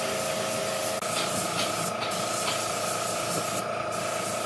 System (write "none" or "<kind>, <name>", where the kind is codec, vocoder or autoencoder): none